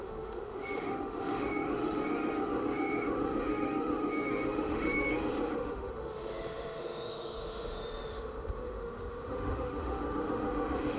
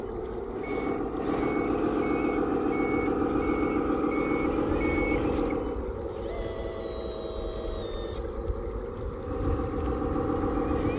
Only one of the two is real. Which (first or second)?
second